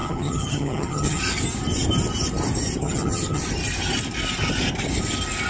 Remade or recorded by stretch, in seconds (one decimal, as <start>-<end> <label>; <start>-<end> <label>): 0.0-1.2 remade; 1.2-2.8 recorded; 2.8-3.4 remade; 3.4-5.5 recorded